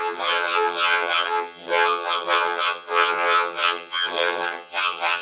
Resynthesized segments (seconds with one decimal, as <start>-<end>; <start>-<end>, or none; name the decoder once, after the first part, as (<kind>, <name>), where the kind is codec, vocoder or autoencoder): 0.0-5.2 (vocoder, HiFi-GAN)